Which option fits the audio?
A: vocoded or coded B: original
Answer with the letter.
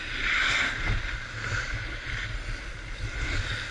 B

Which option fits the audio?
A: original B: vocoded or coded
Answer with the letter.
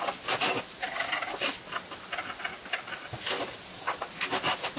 A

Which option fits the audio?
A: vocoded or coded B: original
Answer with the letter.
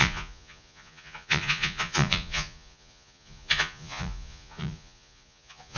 A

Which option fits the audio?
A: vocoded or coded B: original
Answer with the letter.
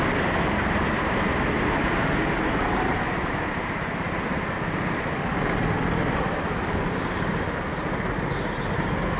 B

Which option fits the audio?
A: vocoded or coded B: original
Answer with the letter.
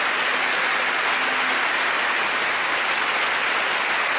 B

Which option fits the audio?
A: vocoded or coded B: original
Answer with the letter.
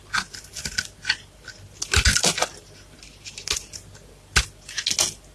B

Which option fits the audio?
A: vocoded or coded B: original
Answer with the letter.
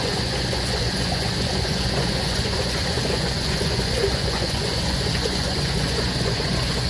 A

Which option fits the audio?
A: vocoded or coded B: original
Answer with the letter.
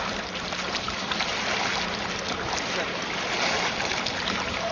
B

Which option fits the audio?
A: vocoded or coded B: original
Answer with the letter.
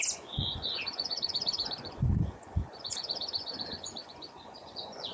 A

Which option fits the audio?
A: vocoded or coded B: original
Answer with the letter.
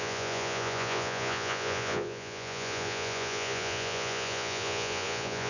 A